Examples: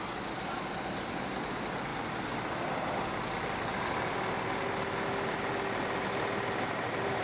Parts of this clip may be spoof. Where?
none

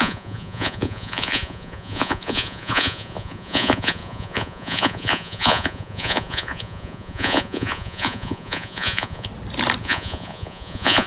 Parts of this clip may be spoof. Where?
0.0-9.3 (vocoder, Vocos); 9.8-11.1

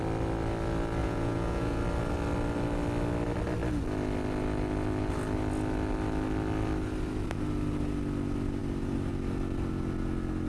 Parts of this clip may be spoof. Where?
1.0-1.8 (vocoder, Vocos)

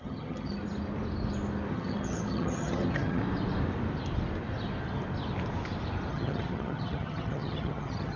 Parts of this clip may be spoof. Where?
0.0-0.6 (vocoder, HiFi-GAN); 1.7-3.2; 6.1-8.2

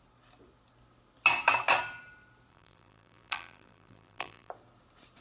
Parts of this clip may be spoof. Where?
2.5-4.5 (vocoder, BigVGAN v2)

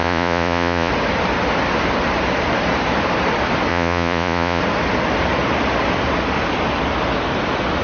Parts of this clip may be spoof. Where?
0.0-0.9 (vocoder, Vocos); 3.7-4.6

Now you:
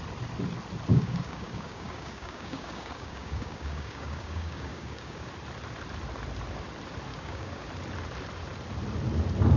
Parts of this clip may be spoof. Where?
0.9-5.3 (codec, DAC); 7.1-7.7

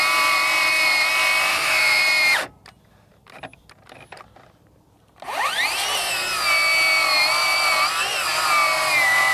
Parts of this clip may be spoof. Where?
1.5-2.0 (autoencoder, DAC-VAE)